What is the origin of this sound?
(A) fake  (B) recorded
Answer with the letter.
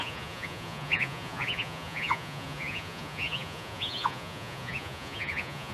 A